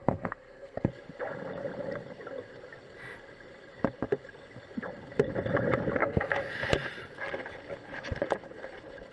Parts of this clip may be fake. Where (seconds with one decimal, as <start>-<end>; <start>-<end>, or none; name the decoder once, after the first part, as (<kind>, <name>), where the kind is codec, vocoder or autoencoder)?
0.0-0.9 (codec, SNAC); 6.0-6.5